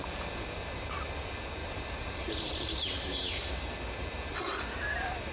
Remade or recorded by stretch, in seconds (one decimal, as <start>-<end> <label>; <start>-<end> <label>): 0.0-1.6 recorded; 1.6-3.5 remade; 3.5-5.3 recorded